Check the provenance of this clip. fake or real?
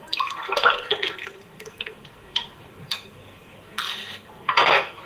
fake